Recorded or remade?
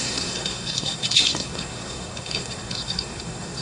remade